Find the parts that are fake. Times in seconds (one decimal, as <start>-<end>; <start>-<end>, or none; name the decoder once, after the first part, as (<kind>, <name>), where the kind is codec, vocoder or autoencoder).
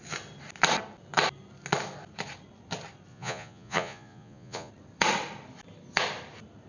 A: 3.1-4.7 (vocoder, Vocos)